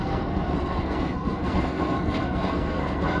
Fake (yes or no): yes